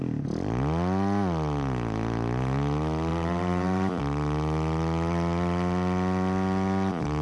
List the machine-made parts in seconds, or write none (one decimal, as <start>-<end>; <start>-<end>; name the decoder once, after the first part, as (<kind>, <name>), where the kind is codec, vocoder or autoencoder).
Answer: 3.1-4.0 (vocoder, BigVGAN v2)